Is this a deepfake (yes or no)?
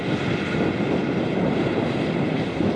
no